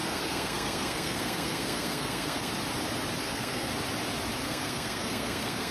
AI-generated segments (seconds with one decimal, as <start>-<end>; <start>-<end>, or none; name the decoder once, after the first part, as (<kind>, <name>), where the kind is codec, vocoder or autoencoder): 0.0-2.5 (codec, SNAC); 3.2-3.7; 4.4-5.7